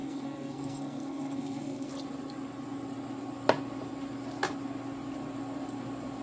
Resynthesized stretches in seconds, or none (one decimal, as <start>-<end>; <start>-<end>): 0.0-1.9